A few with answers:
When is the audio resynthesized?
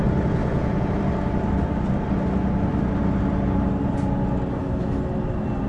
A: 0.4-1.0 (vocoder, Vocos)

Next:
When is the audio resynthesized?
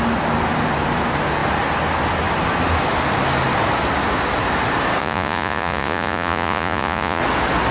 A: 5.0-7.2 (vocoder, Vocos)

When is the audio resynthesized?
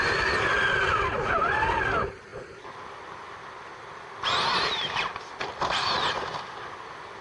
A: none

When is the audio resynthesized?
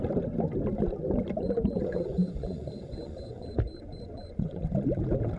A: 1.4-4.6 (vocoder, Vocos)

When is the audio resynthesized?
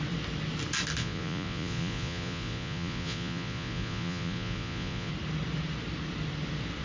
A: 1.0-5.1 (vocoder, Vocos)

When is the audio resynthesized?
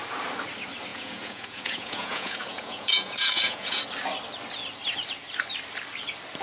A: 0.9-3.8 (vocoder, Vocos)